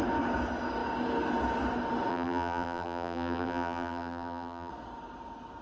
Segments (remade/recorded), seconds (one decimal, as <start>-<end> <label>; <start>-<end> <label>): 0.0-2.1 recorded; 2.1-4.7 remade; 4.7-5.6 recorded